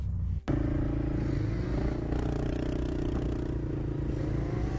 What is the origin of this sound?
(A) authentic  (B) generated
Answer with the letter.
A